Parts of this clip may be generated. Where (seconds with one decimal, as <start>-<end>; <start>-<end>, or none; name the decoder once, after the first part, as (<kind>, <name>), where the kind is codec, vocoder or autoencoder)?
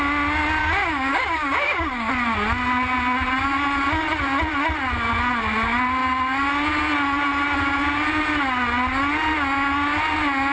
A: 0.6-2.1 (codec, DAC)